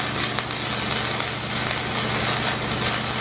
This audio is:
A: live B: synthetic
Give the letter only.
A